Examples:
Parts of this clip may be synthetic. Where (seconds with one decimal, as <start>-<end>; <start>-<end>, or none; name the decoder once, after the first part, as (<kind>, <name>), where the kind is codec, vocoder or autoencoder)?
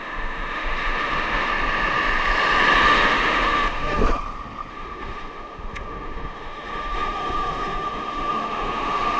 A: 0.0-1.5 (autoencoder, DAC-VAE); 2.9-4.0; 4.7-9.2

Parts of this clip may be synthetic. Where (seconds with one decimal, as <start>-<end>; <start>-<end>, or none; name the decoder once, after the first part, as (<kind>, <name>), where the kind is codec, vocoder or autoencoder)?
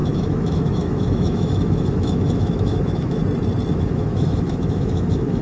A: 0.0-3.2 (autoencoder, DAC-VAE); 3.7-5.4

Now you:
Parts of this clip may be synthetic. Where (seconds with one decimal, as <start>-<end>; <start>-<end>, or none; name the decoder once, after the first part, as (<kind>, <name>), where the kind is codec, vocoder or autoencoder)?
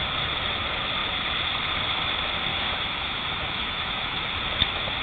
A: 2.5-4.2 (autoencoder, DAC-VAE)